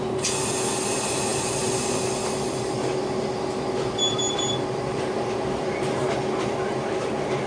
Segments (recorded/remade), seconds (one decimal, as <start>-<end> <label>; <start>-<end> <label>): 0.0-7.5 recorded